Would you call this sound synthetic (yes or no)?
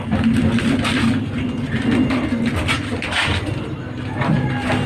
no